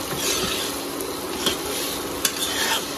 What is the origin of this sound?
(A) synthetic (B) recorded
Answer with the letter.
B